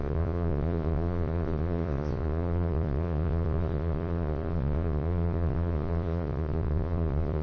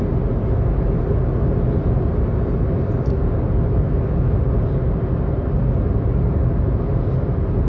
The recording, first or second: second